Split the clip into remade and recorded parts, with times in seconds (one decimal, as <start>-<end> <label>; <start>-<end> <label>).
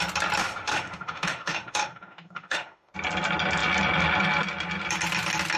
0.0-0.4 recorded; 0.4-2.9 remade; 2.9-5.6 recorded